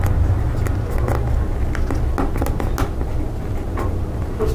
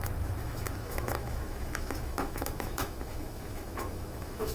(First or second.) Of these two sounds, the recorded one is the first